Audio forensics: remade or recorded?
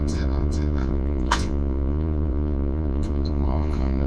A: remade